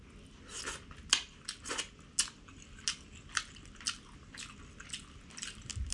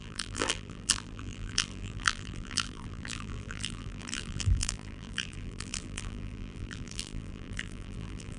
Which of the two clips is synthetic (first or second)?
second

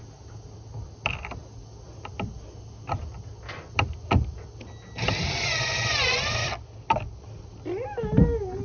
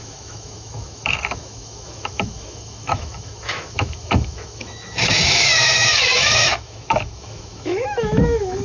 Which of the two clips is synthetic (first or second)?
second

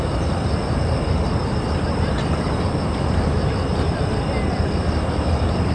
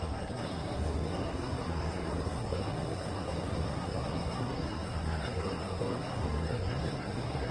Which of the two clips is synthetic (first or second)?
second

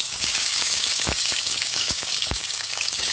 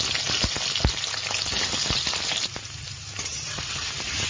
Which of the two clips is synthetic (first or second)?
first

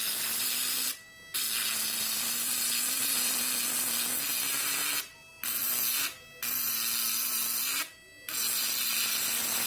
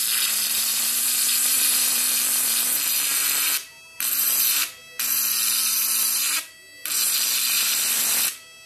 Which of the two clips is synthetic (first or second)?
second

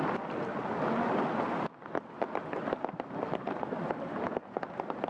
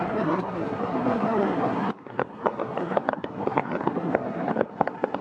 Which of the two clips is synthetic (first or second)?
second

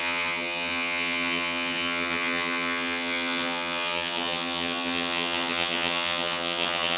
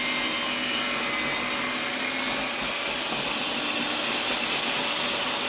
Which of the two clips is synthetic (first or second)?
first